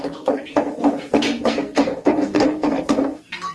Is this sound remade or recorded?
remade